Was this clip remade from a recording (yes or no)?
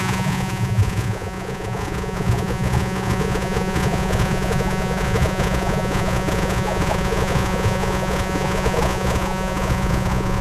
yes